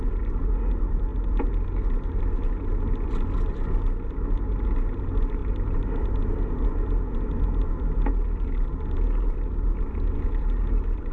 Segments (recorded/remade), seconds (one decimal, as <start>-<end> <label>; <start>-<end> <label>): 0.0-5.4 recorded; 5.4-6.1 remade; 6.1-11.1 recorded